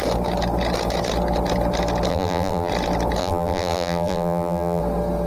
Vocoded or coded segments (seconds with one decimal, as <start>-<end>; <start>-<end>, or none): 2.1-2.7; 3.2-4.8